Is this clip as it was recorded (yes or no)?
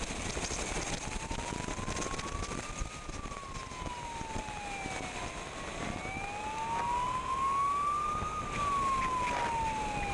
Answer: yes